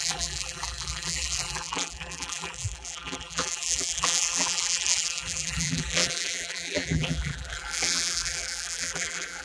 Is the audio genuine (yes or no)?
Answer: no